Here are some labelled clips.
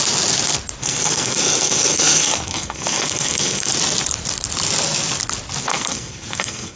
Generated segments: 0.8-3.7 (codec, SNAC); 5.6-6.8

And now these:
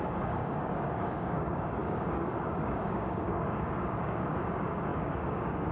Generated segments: 0.0-5.7 (codec, DAC)

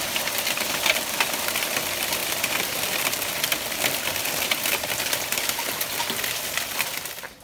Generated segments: none

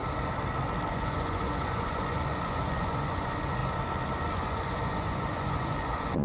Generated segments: 0.9-3.6 (vocoder, Vocos); 4.3-6.2

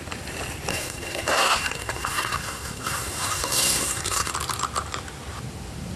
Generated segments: 0.7-4.3 (codec, SNAC)

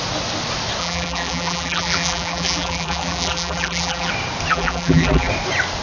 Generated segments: 0.8-4.1 (vocoder, BigVGAN v2); 4.5-5.3

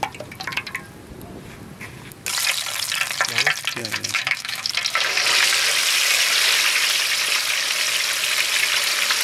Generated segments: 3.8-4.7 (autoencoder, DAC-VAE)